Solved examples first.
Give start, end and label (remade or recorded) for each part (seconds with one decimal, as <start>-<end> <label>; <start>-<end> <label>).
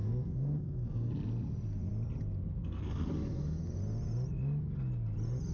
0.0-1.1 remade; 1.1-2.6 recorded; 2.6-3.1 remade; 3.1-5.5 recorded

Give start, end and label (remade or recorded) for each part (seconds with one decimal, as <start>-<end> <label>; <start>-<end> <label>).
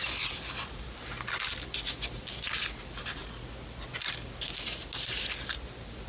0.0-6.1 recorded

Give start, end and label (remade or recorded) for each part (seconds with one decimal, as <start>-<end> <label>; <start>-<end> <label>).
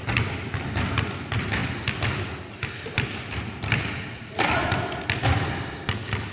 0.0-6.3 recorded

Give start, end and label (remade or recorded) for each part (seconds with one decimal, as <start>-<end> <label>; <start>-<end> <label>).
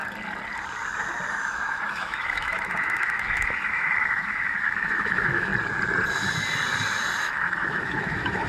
0.0-1.3 recorded; 1.3-5.5 remade; 5.5-7.2 recorded; 7.2-8.5 remade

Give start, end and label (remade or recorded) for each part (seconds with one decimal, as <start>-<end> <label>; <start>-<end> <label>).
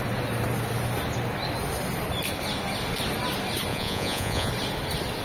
0.0-3.7 recorded; 3.7-4.5 remade; 4.5-5.2 recorded